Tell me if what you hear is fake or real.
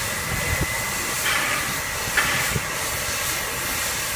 fake